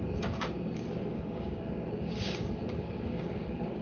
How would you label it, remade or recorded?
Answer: remade